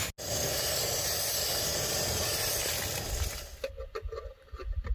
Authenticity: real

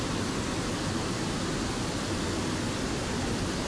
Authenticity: real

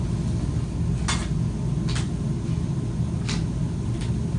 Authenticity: real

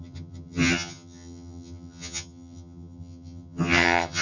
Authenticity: fake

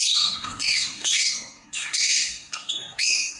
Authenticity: fake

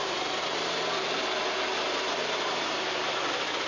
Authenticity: real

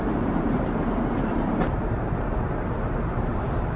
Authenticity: fake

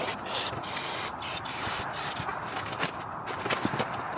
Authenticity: real